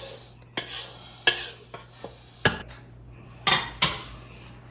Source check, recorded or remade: recorded